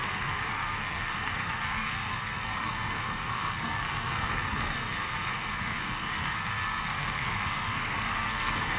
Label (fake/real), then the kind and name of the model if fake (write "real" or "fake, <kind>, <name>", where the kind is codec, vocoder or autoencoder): fake, codec, SNAC